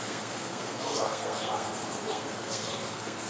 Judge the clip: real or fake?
fake